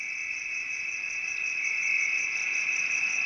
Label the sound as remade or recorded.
recorded